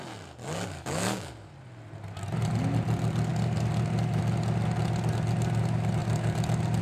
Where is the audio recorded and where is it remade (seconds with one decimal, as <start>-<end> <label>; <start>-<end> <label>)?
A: 0.0-0.4 recorded; 0.4-1.3 remade; 1.3-6.8 recorded